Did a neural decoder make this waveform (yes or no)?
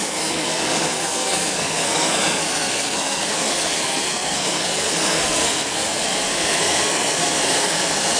yes